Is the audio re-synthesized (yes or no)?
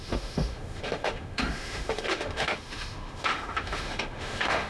yes